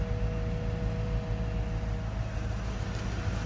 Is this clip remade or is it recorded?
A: recorded